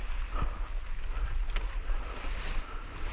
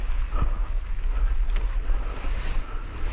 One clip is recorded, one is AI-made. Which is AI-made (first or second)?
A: first